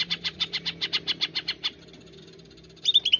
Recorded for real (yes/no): yes